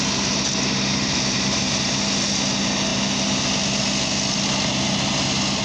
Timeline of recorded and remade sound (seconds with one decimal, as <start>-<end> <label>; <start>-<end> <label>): 0.0-1.0 recorded; 1.0-1.9 remade; 1.9-5.6 recorded